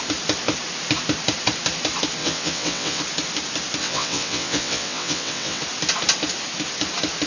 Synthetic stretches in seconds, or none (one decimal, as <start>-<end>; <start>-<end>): 2.2-3.0; 3.8-5.6